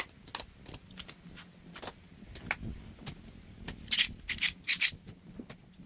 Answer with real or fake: real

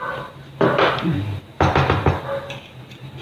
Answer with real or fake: real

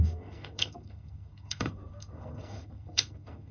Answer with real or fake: fake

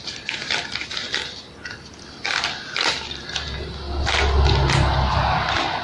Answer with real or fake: real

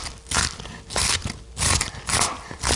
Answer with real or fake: real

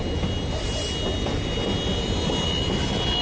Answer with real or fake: real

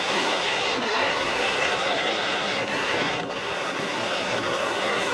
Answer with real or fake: fake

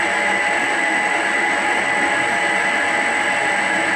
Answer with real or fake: real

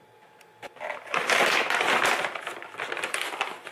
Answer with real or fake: real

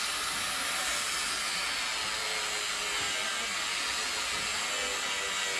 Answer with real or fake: real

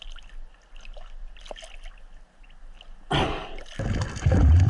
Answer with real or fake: real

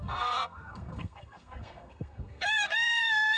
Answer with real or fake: fake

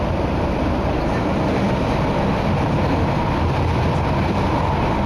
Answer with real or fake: real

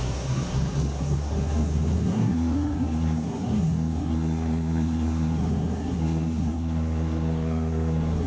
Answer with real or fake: fake